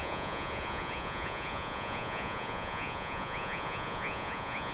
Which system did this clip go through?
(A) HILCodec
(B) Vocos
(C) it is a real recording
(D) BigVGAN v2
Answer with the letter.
B